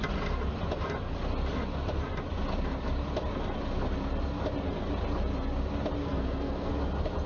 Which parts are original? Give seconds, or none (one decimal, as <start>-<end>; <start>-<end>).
0.0-6.0; 6.7-7.3

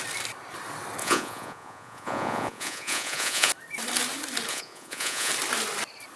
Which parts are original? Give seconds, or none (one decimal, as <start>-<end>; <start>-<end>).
0.0-1.0; 3.5-4.5; 5.3-6.2

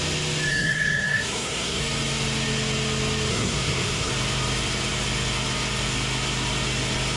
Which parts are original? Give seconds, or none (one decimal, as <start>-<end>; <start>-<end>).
0.0-0.5; 1.8-3.3; 4.1-7.2

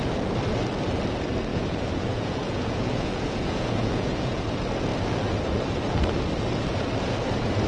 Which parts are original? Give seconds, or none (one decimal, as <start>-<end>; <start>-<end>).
0.0-1.5; 4.4-7.7